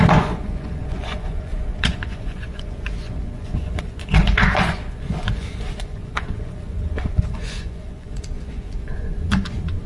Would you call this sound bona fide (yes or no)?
no